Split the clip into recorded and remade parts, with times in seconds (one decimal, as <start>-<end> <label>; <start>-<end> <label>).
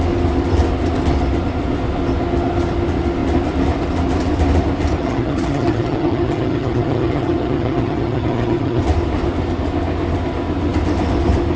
0.0-5.0 recorded; 5.0-8.8 remade; 8.8-11.6 recorded